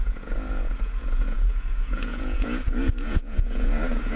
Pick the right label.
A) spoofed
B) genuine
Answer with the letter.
A